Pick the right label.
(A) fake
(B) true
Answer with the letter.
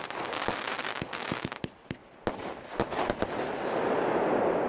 B